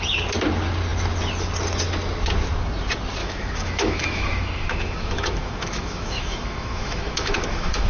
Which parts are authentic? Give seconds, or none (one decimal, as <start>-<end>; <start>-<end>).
0.0-3.2